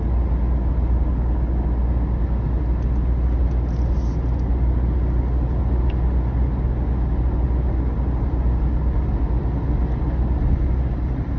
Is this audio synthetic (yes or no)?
no